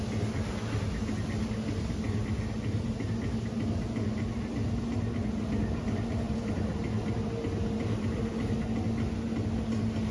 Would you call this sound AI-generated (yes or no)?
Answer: no